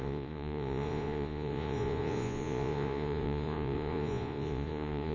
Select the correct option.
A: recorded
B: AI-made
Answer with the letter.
B